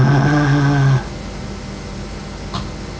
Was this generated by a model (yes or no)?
no